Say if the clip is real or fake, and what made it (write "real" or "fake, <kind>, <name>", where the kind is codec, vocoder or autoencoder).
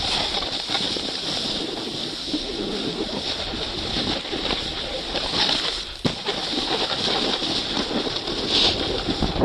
real